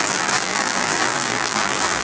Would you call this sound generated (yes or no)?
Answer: yes